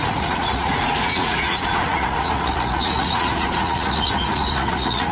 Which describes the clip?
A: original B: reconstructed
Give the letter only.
B